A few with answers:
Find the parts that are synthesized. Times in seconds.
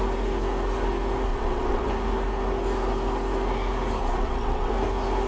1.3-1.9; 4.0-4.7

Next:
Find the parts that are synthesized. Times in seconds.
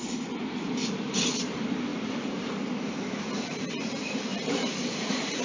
1.9-5.4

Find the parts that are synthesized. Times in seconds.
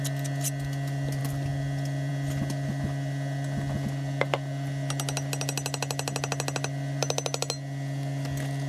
none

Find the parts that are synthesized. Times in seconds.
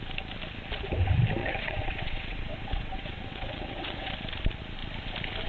1.4-4.1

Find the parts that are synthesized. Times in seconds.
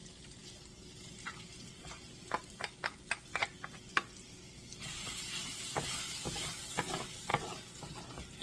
none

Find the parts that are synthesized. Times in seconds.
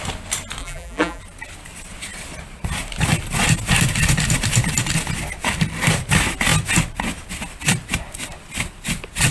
0.6-1.2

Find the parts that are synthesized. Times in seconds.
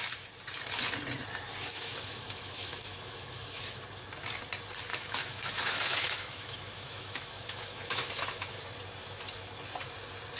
1.6-3.8; 4.9-8.6